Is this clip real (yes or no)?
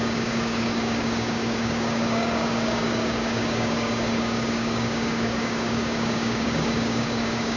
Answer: no